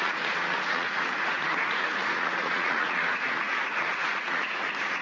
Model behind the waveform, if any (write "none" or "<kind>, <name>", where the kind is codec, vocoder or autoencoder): vocoder, Vocos